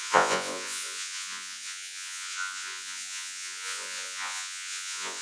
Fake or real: fake